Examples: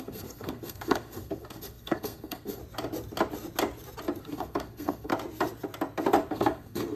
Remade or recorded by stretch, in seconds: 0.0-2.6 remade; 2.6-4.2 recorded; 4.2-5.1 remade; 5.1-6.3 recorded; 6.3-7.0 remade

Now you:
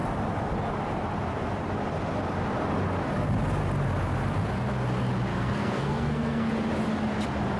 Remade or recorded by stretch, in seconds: 0.0-5.3 recorded; 5.3-6.5 remade; 6.5-7.6 recorded